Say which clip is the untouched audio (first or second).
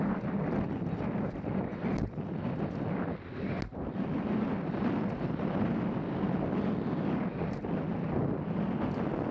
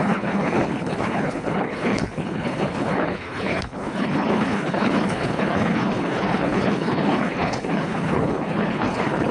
first